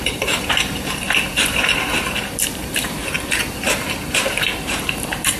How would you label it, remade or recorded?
remade